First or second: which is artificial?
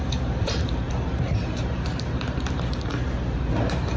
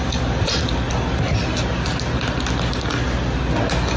first